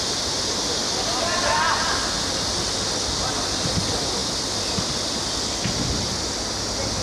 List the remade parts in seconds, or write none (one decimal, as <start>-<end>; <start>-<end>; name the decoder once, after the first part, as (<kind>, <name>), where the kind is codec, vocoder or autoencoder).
none